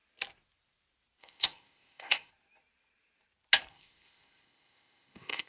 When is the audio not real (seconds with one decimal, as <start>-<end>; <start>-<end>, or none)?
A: 1.2-2.3; 3.7-5.5